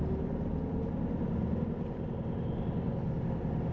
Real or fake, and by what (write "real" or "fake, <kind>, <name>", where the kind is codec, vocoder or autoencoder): real